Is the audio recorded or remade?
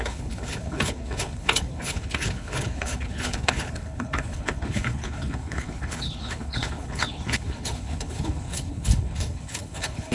remade